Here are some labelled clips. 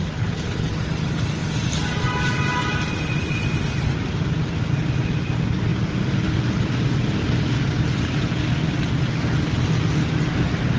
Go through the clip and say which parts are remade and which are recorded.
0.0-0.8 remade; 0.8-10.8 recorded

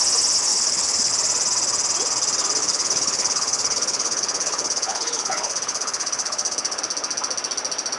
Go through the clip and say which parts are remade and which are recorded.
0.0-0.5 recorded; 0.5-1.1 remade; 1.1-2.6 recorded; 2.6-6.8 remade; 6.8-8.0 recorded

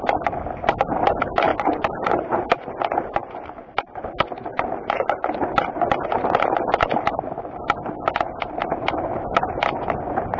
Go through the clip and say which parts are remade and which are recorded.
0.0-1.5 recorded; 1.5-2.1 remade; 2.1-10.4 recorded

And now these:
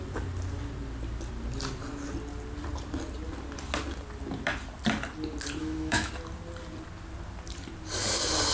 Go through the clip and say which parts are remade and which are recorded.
0.0-5.6 recorded; 5.6-6.1 remade; 6.1-8.5 recorded

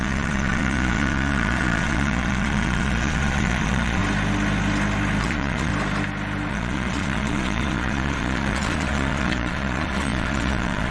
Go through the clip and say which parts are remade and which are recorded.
0.0-4.0 remade; 4.0-5.2 recorded; 5.2-5.7 remade; 5.7-6.5 recorded; 6.5-10.9 remade

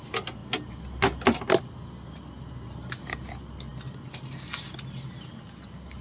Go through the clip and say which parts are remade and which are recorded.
0.0-6.0 recorded